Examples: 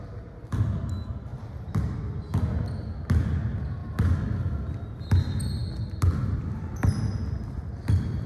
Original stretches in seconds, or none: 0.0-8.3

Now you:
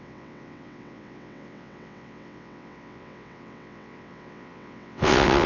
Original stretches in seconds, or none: none

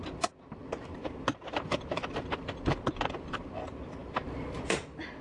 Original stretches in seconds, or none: 0.0-5.2

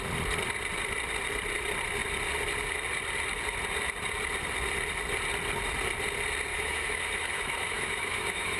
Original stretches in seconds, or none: 0.0-6.5

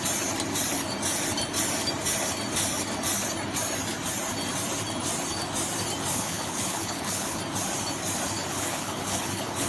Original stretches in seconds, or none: 0.0-6.1; 7.4-8.5

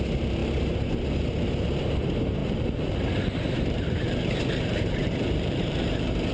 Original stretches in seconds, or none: 0.0-0.4; 0.9-2.4

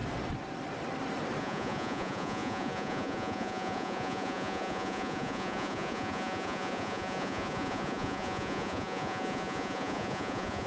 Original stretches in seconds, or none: 0.0-1.4